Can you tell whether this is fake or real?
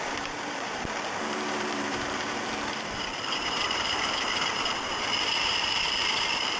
fake